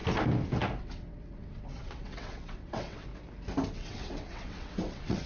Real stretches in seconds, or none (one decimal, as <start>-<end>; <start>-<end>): 0.0-0.8; 3.1-3.7